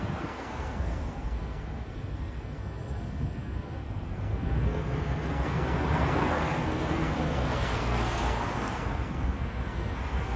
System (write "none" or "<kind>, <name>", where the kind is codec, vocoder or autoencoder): codec, SNAC